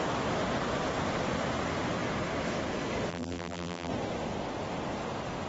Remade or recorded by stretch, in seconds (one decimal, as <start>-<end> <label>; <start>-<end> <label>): 0.0-3.1 recorded; 3.1-3.9 remade; 3.9-5.5 recorded